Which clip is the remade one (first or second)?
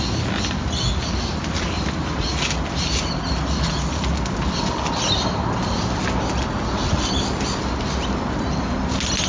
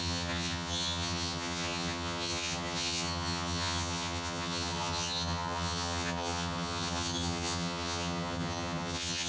second